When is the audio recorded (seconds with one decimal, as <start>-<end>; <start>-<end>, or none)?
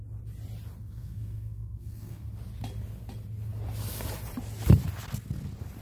0.0-0.8; 2.3-5.8